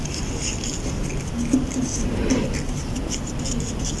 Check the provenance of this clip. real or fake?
real